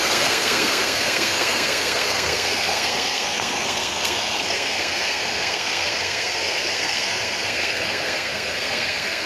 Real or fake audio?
fake